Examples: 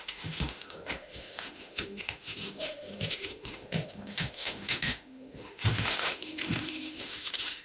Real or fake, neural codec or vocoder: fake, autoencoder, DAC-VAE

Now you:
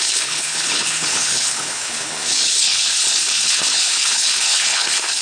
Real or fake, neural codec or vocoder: fake, codec, HILCodec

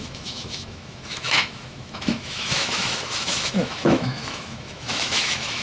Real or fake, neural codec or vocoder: fake, autoencoder, DAC-VAE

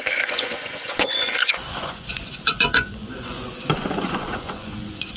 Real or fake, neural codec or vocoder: fake, vocoder, Vocos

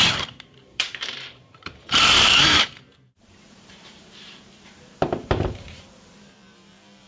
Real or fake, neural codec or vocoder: fake, vocoder, BigVGAN v2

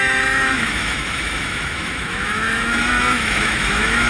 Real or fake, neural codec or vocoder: fake, autoencoder, DAC-VAE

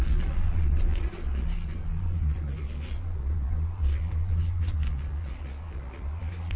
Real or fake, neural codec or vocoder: fake, vocoder, Vocos